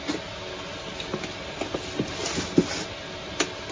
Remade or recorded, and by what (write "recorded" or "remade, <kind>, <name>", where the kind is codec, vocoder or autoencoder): recorded